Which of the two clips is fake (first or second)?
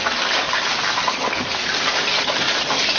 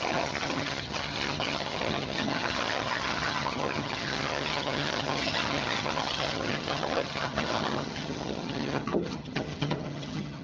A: second